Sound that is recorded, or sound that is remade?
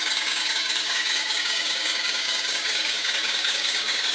remade